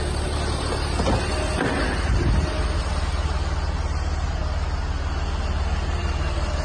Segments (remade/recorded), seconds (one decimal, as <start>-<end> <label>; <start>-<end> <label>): 0.0-6.6 recorded